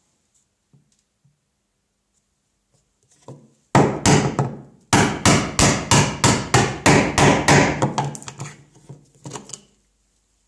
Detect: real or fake real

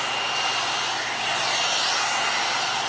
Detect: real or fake real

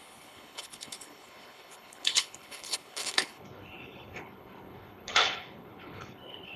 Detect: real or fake fake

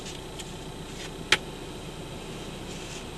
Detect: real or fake real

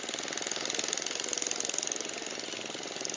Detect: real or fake real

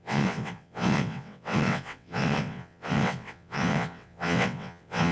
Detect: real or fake fake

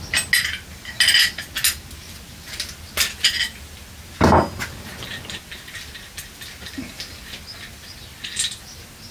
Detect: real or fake real